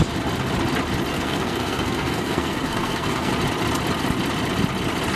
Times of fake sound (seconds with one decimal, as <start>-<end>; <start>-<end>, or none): 1.1-3.3

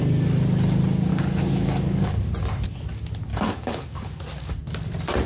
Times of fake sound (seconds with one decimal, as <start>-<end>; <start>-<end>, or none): 1.1-2.2; 3.3-4.1